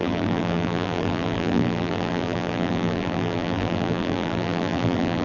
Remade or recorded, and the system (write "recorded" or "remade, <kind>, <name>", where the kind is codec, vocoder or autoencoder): remade, vocoder, BigVGAN v2